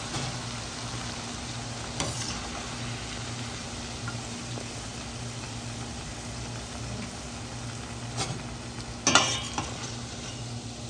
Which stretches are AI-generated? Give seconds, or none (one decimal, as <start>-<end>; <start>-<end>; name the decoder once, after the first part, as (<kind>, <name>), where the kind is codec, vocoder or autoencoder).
none